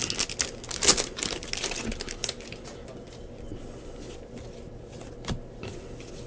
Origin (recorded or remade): recorded